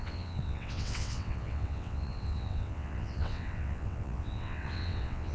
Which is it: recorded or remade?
remade